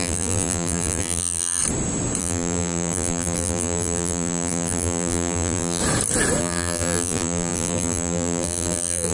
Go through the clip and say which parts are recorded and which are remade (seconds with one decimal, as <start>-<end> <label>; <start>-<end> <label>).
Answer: 0.0-1.6 remade; 1.6-2.2 recorded; 2.2-5.8 remade; 5.8-6.4 recorded; 6.4-9.1 remade